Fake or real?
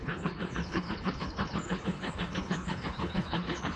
fake